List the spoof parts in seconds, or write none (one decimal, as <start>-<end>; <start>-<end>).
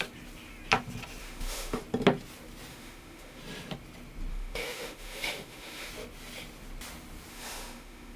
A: 1.2-1.8; 2.7-3.4; 4.3-5.9; 7.3-8.2